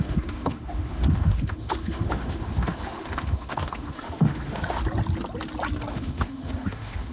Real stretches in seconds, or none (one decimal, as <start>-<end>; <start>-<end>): 4.8-5.9

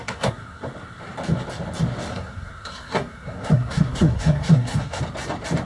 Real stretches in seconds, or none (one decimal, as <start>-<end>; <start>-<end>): 0.6-2.1; 5.0-5.7

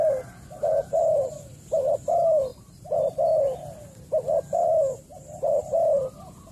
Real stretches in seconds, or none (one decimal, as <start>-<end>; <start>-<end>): 0.0-2.5; 3.1-5.1; 6.0-6.5

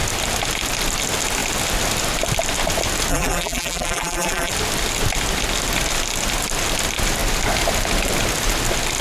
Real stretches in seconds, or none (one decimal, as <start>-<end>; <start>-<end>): 0.0-3.1; 4.5-9.0